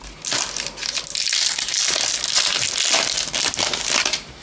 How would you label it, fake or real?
real